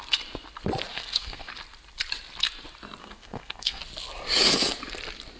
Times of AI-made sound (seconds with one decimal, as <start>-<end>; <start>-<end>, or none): 0.9-1.5; 3.0-3.8